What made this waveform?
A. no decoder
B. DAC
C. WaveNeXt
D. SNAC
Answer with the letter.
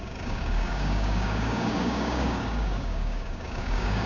B